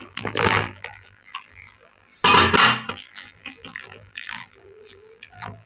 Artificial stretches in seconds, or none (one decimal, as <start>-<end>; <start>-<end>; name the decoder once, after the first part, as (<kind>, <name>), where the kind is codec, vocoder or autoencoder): 0.0-2.1 (vocoder, BigVGAN v2); 2.9-5.7